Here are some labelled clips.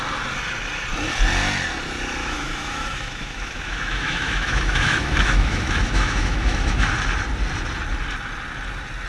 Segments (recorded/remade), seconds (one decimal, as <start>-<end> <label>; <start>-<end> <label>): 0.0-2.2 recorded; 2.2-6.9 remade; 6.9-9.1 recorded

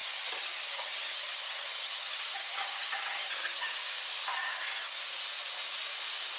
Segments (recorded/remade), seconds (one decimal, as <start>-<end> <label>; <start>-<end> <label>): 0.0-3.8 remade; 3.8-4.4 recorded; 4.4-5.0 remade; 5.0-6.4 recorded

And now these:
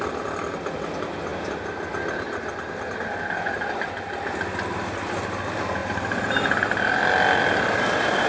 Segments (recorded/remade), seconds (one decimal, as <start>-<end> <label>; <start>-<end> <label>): 0.0-8.3 recorded